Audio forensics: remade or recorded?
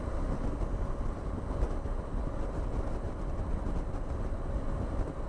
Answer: recorded